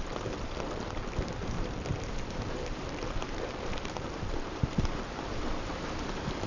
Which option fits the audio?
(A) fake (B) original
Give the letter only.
A